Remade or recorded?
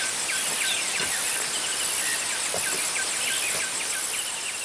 recorded